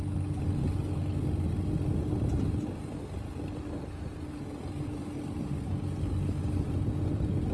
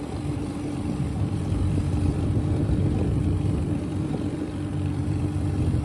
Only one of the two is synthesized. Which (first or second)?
second